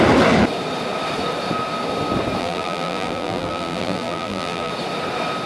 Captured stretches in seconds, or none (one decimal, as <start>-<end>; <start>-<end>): 0.0-2.4; 4.7-5.5